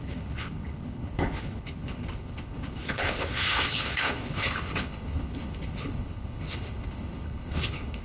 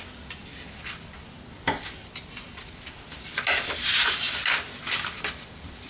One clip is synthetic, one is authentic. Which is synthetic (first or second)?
first